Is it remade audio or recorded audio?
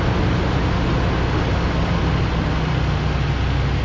recorded